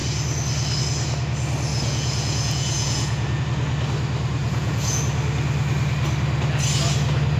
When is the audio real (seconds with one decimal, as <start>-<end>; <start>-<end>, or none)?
0.0-1.7; 3.4-4.4; 5.0-7.4